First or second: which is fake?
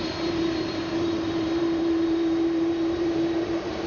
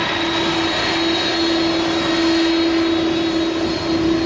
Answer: first